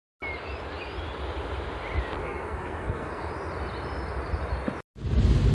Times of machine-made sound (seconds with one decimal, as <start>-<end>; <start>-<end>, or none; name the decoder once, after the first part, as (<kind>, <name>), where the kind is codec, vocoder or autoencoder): 2.2-3.3 (codec, SNAC)